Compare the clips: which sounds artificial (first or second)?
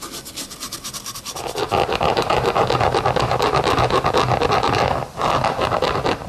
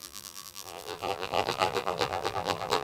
second